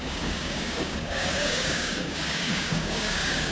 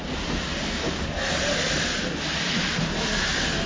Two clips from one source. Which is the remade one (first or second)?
first